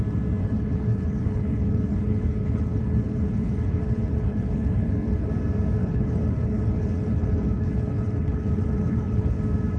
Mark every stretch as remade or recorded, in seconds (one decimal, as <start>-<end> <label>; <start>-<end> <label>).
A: 0.0-0.4 recorded; 0.4-5.3 remade; 5.3-5.8 recorded; 5.8-9.4 remade; 9.4-9.8 recorded

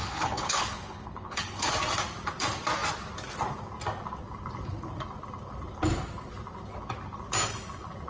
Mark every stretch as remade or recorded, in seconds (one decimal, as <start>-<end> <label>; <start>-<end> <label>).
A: 0.0-1.7 remade; 1.7-8.1 recorded

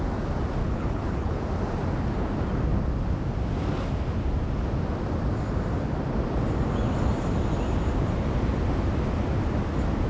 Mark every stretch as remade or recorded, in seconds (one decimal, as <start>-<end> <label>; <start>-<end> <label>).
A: 0.0-0.6 recorded; 0.6-1.4 remade; 1.4-10.1 recorded

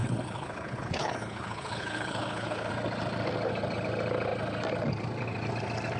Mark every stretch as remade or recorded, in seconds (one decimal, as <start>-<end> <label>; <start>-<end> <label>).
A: 0.0-2.7 remade; 2.7-6.0 recorded

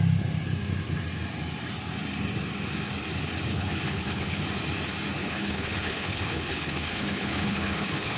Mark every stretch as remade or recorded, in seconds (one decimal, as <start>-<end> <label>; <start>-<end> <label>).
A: 0.0-3.5 recorded; 3.5-4.4 remade; 4.4-5.2 recorded; 5.2-8.2 remade

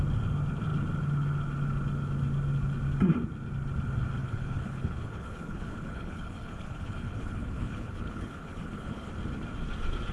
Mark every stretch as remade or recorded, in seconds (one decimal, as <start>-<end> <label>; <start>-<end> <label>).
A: 0.0-4.2 recorded; 4.2-9.1 remade; 9.1-10.1 recorded

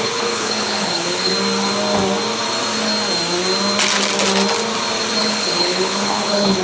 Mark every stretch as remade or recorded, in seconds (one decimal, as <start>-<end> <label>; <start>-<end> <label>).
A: 0.0-1.3 remade; 1.3-5.2 recorded; 5.2-6.6 remade

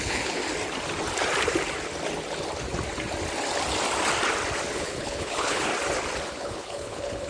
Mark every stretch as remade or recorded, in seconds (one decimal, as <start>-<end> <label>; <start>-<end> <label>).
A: 0.0-0.4 remade; 0.4-4.7 recorded; 4.7-5.7 remade; 5.7-6.3 recorded; 6.3-7.3 remade